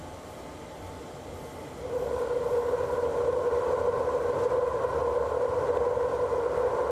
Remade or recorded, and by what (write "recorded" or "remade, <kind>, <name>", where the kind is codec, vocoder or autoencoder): recorded